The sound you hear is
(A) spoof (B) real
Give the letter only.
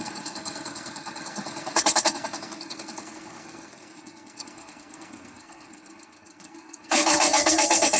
A